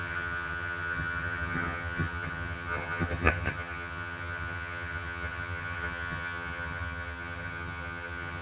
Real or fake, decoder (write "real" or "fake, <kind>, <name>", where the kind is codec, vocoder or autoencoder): fake, vocoder, HiFi-GAN